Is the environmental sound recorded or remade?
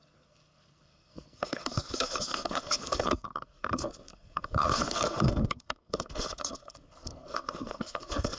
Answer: remade